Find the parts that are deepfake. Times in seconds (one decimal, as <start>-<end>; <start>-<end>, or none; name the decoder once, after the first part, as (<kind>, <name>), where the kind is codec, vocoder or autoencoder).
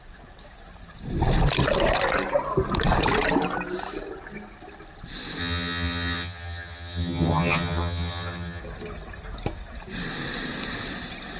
5.4-8.6 (vocoder, HiFi-GAN)